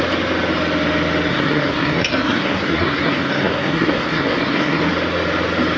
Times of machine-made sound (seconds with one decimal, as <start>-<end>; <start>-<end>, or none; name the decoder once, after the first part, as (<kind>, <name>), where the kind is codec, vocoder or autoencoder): 1.3-4.8 (codec, SNAC)